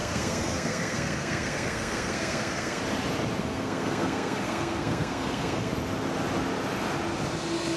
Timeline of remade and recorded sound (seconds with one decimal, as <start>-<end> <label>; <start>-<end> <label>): 0.0-2.8 remade; 2.8-3.4 recorded; 3.4-5.7 remade; 5.7-7.8 recorded